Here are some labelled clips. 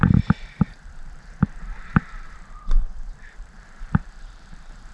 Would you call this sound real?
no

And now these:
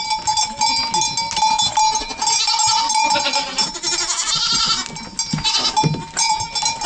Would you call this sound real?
yes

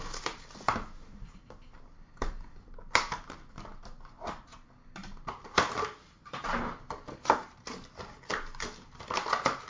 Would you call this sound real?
yes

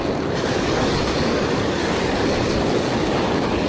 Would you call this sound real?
no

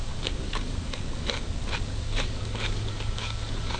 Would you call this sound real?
no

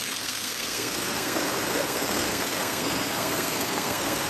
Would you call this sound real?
no